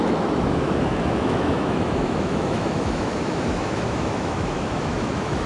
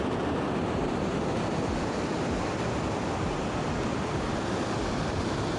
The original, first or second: second